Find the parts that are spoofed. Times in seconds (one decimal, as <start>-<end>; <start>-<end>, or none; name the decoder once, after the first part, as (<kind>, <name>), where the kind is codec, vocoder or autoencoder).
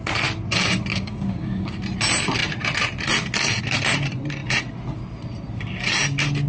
0.9-1.8 (codec, DAC)